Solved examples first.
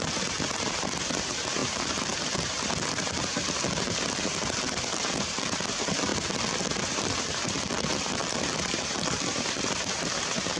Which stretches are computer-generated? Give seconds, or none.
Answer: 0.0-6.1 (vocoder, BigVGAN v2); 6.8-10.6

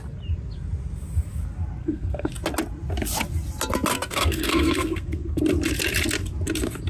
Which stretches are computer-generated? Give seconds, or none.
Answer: 1.8-2.3 (codec, SNAC); 3.9-5.4

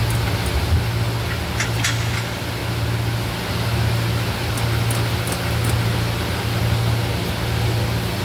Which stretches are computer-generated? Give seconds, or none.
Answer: none

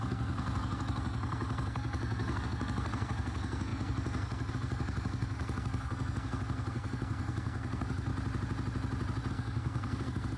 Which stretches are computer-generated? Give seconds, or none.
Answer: 0.0-8.1 (codec, SNAC); 9.3-10.4

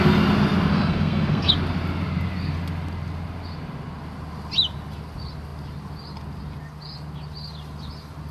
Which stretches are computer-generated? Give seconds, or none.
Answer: 0.7-1.5 (codec, SNAC)

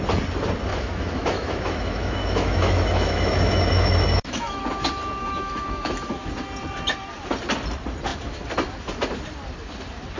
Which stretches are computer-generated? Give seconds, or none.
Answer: 0.7-4.6 (autoencoder, DAC-VAE); 5.2-6.3

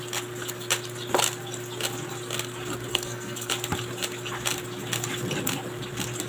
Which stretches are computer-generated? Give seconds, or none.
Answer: 2.9-3.5 (codec, SNAC)

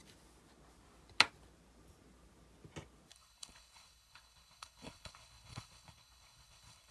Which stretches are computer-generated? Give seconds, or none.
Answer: 3.1-6.9 (codec, HILCodec)